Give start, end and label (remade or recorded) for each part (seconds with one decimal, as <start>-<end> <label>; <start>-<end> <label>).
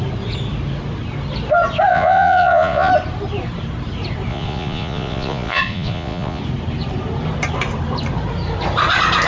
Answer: 0.0-1.9 recorded; 1.9-2.9 remade; 2.9-4.3 recorded; 4.3-6.4 remade; 6.4-9.3 recorded